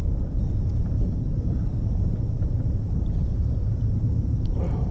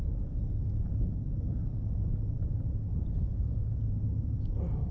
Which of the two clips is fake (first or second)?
first